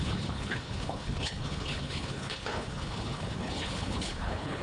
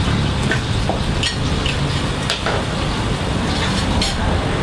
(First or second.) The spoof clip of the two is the first